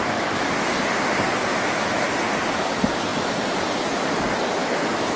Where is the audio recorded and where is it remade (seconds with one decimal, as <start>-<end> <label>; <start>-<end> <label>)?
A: 0.0-1.5 recorded; 1.5-2.1 remade; 2.1-4.6 recorded; 4.6-5.2 remade